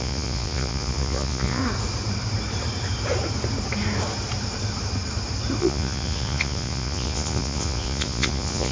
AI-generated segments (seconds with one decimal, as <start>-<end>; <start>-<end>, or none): 0.0-1.6; 5.6-8.7